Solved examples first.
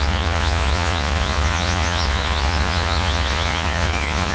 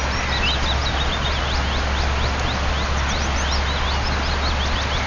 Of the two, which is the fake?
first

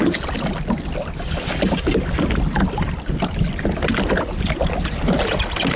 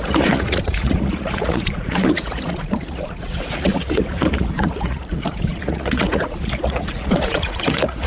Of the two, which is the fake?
second